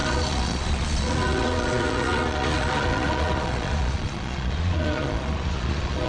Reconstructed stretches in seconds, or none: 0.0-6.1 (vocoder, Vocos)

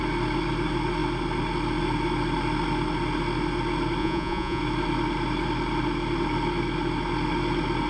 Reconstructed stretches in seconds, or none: 4.0-4.6 (vocoder, Vocos)

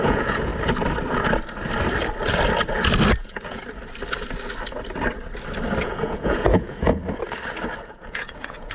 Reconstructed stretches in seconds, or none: 0.0-0.5 (vocoder, Vocos); 3.2-3.6; 5.8-7.0; 7.8-8.7

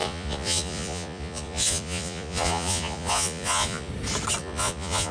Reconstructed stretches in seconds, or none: 0.0-3.9 (vocoder, Vocos); 4.4-5.1